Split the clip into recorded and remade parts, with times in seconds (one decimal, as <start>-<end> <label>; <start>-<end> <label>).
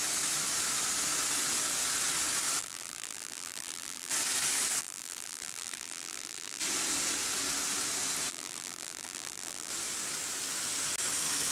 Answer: 0.0-2.6 recorded; 2.6-4.1 remade; 4.1-4.8 recorded; 4.8-6.6 remade; 6.6-8.3 recorded; 8.3-9.7 remade; 9.7-11.5 recorded